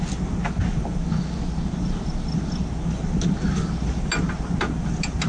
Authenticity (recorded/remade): recorded